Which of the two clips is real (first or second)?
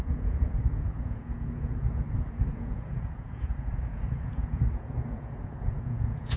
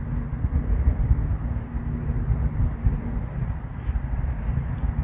second